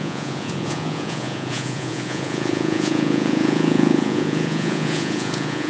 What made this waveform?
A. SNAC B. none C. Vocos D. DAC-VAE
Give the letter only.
C